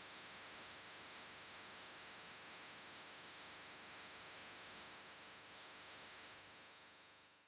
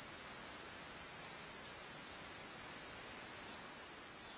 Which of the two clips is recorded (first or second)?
second